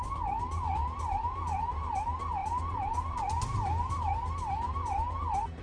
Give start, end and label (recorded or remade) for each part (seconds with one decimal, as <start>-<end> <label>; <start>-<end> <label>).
0.0-5.6 recorded